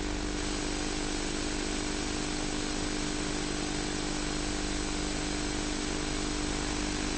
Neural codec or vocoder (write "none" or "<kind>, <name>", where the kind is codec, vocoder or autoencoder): none